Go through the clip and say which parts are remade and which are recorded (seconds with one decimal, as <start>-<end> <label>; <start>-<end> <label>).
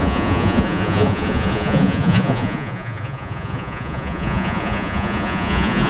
0.0-5.9 remade